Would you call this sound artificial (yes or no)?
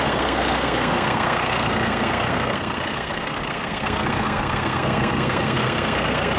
yes